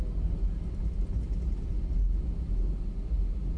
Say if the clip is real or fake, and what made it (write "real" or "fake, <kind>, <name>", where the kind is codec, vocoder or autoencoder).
real